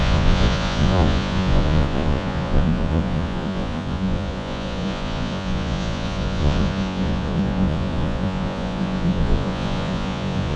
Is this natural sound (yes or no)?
no